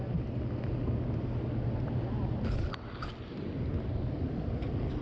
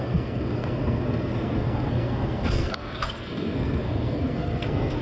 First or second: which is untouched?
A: first